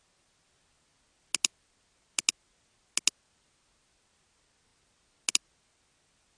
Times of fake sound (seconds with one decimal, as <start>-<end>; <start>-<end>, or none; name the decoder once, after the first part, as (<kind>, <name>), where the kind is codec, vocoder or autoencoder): none